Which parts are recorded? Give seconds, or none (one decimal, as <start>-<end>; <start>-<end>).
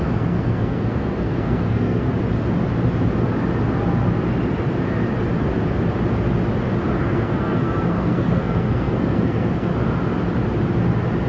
2.1-7.0; 9.7-11.3